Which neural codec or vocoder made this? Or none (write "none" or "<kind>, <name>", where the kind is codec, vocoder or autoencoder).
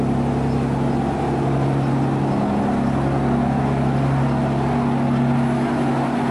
none